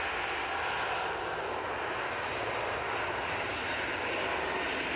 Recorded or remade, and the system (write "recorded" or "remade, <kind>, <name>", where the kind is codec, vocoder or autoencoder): recorded